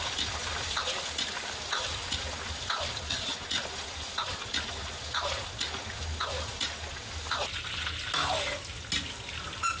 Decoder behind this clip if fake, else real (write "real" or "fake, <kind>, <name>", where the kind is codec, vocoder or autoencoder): real